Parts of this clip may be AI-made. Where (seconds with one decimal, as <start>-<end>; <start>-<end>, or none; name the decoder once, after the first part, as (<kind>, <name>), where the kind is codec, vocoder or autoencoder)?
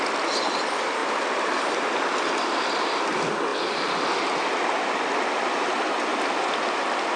1.0-1.6 (vocoder, BigVGAN v2); 6.1-7.2